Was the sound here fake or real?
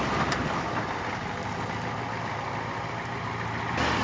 real